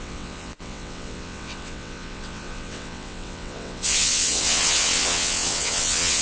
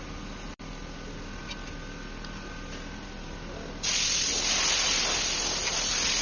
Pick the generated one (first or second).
first